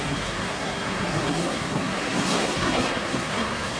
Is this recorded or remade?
remade